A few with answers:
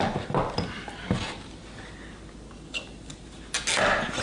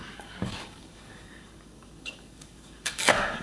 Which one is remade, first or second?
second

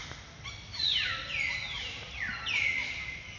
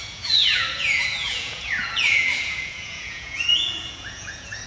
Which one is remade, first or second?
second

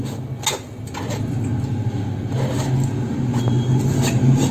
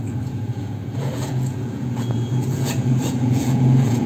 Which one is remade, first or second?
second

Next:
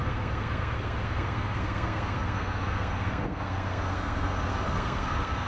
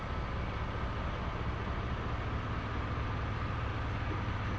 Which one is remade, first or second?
first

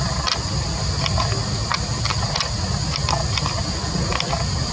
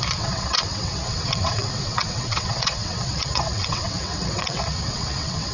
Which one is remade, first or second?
second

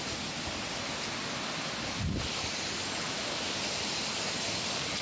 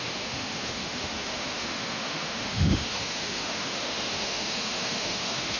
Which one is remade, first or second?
second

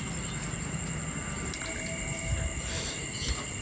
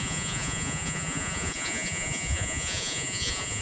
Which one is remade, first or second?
second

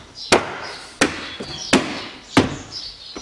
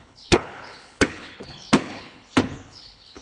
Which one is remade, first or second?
second